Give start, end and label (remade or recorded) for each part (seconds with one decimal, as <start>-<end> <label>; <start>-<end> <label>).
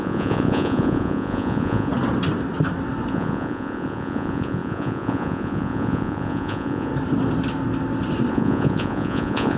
0.0-1.9 remade; 1.9-3.1 recorded; 3.1-6.9 remade; 6.9-8.3 recorded; 8.3-9.6 remade